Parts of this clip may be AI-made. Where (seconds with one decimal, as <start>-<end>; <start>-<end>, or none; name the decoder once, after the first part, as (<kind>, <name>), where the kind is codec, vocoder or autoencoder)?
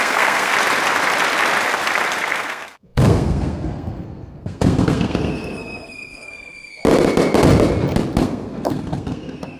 0.0-0.5 (codec, SNAC); 2.3-6.8; 8.2-9.6